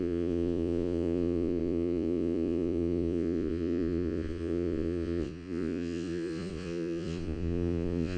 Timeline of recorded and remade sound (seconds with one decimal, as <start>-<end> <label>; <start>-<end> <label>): 0.0-8.2 remade